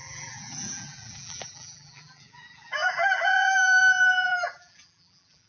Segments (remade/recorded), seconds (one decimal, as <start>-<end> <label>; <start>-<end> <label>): 0.0-5.5 remade